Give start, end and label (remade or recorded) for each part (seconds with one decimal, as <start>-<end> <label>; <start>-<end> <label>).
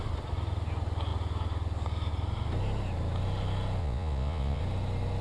0.0-3.8 recorded; 3.8-4.6 remade; 4.6-5.2 recorded